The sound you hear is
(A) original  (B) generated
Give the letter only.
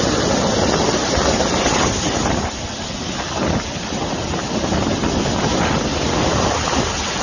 A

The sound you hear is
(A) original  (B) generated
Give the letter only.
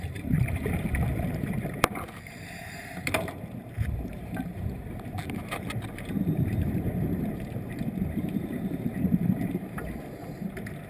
B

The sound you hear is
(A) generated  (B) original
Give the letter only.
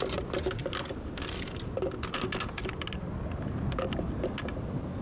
B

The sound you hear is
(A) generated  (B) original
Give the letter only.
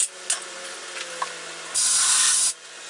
B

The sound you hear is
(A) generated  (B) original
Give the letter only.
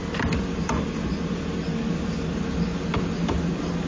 B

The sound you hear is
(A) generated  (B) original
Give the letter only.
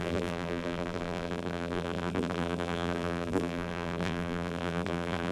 A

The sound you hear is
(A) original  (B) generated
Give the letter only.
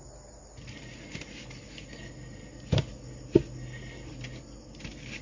A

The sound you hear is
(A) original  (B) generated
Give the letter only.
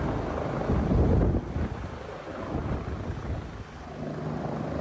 A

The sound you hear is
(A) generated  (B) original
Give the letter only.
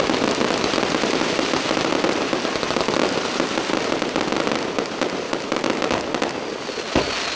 B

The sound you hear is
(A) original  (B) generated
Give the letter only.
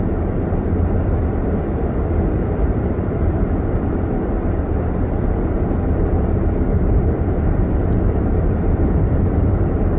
B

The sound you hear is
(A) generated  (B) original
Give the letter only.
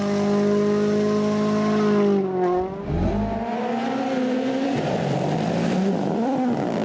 B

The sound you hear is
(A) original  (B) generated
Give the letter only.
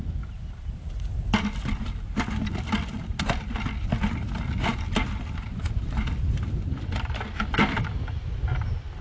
A